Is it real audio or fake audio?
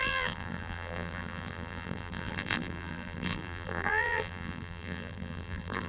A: fake